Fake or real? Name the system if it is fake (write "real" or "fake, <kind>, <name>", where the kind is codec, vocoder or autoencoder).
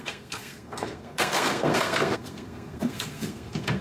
fake, codec, SNAC